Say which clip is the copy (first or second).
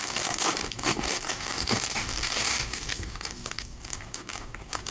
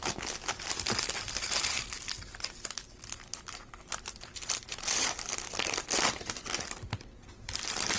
first